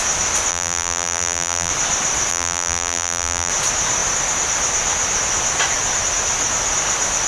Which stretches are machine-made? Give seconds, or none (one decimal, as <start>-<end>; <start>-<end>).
0.5-1.7; 2.3-3.5